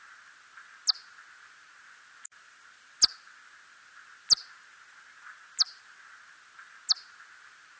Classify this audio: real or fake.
real